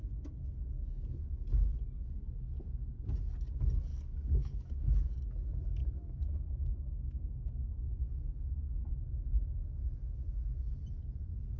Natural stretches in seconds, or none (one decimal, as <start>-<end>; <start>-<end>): 0.0-3.9; 5.1-5.8; 8.9-11.6